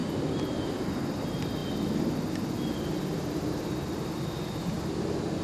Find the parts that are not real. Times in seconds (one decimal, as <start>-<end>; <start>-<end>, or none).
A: none